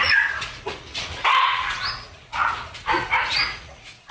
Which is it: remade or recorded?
remade